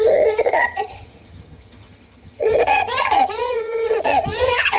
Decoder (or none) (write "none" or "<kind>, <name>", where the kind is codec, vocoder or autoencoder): vocoder, HiFi-GAN